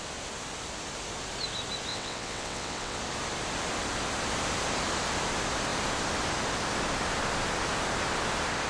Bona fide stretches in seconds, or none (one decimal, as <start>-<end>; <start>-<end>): 0.0-1.9; 3.0-8.7